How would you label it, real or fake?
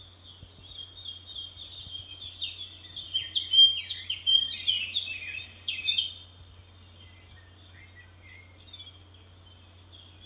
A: real